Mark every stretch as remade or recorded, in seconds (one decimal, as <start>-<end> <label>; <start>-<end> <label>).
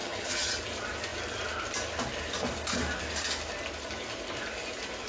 0.0-0.5 remade; 0.5-5.1 recorded